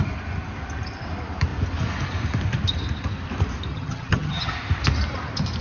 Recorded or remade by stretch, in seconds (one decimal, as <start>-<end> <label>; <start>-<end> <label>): 0.0-3.7 recorded; 3.7-4.5 remade; 4.5-5.6 recorded